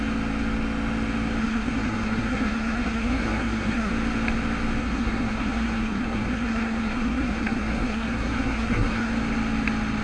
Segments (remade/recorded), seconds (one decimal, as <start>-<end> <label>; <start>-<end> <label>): 0.0-1.4 recorded; 1.4-3.9 remade; 3.9-4.8 recorded; 4.8-9.1 remade; 9.1-10.0 recorded